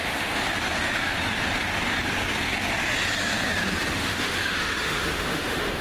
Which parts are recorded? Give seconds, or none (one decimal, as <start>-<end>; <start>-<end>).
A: 0.4-3.9